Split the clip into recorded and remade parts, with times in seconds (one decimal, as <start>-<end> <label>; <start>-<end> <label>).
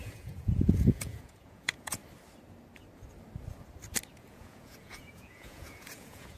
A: 0.0-2.0 remade; 2.0-4.1 recorded; 4.1-6.4 remade